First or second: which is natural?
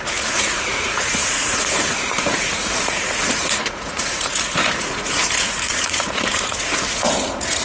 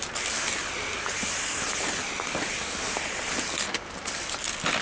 second